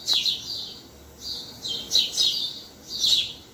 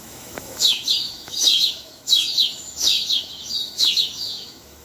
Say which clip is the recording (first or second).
first